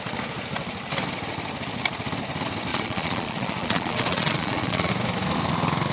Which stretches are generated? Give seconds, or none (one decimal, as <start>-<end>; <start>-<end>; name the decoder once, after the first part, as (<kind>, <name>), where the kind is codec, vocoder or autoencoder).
2.7-4.9 (vocoder, Vocos)